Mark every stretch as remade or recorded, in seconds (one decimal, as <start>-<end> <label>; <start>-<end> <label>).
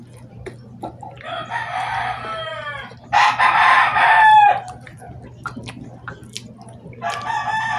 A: 0.0-7.8 recorded